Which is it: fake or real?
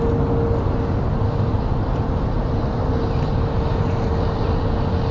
real